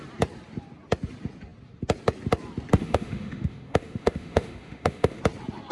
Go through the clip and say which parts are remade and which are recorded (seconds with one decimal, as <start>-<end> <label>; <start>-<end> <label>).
0.0-2.8 recorded; 2.8-5.2 remade; 5.2-5.7 recorded